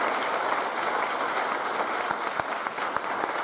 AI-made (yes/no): no